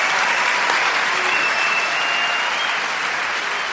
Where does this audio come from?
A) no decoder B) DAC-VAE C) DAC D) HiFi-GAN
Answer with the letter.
A